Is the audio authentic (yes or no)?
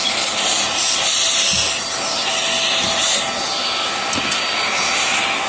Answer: yes